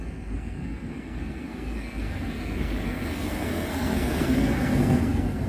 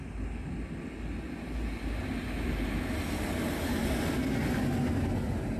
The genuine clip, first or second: second